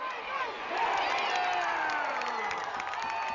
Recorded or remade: recorded